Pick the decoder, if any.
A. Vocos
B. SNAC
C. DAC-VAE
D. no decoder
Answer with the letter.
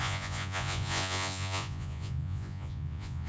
A